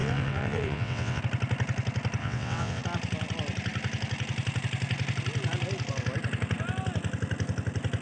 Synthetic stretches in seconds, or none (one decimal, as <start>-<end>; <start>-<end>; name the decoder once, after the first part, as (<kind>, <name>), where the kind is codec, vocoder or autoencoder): 0.0-1.2 (vocoder, WaveNeXt); 2.2-2.8